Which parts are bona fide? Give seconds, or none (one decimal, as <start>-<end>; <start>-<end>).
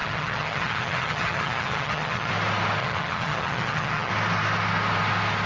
2.3-2.8; 4.1-5.5